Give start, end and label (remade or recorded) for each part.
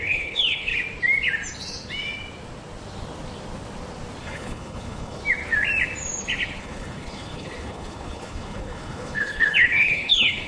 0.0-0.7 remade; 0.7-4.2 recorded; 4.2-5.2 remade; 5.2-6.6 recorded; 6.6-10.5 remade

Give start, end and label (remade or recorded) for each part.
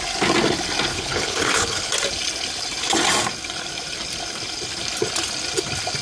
0.0-0.9 recorded; 0.9-1.9 remade; 1.9-6.0 recorded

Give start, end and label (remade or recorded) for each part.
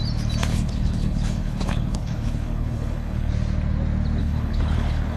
0.0-0.5 recorded; 0.5-3.3 remade; 3.3-4.2 recorded; 4.2-5.2 remade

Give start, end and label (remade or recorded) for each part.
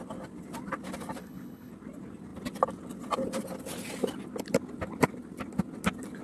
0.0-1.2 recorded; 1.2-1.7 remade; 1.7-6.2 recorded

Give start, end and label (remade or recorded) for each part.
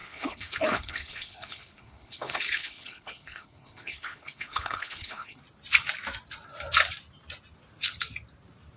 0.0-5.4 remade; 5.4-8.8 recorded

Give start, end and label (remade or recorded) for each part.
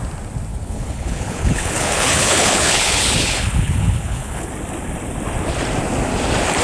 0.0-0.5 recorded; 0.5-4.5 remade; 4.5-6.6 recorded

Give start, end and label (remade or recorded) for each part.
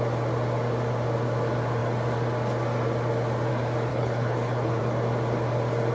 0.0-3.9 recorded; 3.9-4.8 remade; 4.8-5.9 recorded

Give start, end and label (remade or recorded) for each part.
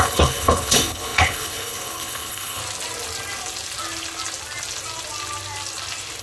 0.0-2.6 remade; 2.6-6.2 recorded